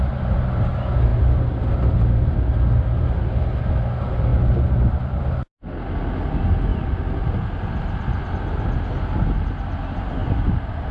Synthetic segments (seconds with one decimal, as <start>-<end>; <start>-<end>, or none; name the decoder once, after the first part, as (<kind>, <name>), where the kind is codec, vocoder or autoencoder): 4.3-5.2 (vocoder, BigVGAN v2); 6.7-8.3; 10.2-10.9

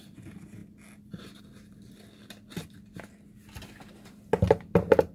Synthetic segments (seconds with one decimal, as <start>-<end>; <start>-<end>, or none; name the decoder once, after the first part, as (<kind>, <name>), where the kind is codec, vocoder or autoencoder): none

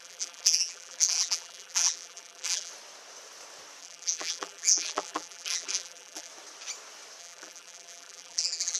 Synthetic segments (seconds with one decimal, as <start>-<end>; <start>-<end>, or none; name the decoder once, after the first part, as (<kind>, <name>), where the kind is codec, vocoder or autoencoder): 0.0-2.7 (vocoder, BigVGAN v2); 3.8-6.3; 7.2-8.8

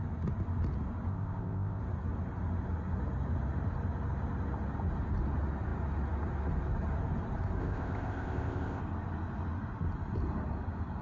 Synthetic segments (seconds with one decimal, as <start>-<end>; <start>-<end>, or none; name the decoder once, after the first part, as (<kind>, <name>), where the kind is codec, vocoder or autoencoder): 1.1-1.8 (codec, ZipCodec); 7.6-8.8

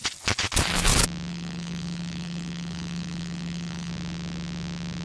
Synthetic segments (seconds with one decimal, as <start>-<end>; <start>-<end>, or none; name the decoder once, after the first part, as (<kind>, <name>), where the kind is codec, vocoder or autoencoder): 1.3-3.9 (codec, HILCodec)

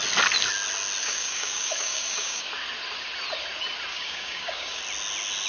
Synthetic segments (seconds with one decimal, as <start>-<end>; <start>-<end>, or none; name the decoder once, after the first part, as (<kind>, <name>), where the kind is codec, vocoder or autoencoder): 1.0-2.5 (codec, DAC); 3.9-4.8

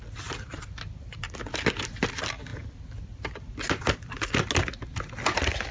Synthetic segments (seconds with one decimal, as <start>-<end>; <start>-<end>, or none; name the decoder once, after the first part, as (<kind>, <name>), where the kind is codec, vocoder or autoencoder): none

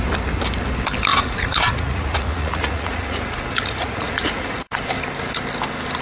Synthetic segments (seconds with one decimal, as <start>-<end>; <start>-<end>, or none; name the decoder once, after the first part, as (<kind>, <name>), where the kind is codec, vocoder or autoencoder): 1.1-4.7 (vocoder, Vocos)